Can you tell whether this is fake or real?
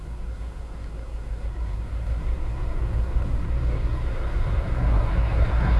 fake